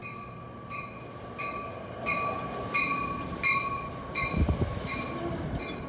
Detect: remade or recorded recorded